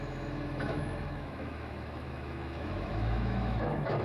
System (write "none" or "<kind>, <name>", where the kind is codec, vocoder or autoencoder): autoencoder, DAC-VAE